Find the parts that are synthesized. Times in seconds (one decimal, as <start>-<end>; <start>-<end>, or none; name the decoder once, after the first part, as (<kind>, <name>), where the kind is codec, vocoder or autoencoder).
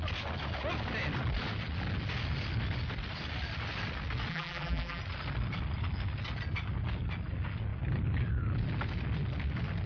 4.3-5.0 (vocoder, BigVGAN v2)